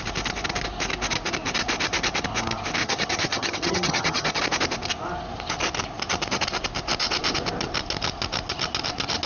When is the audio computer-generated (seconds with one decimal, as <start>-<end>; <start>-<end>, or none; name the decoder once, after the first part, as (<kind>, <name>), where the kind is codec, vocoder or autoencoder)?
2.8-4.4 (vocoder, HiFi-GAN)